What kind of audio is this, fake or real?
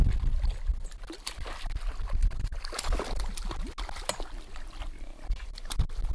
real